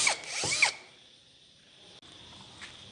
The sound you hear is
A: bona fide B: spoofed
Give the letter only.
A